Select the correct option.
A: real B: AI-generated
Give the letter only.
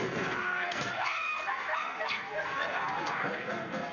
B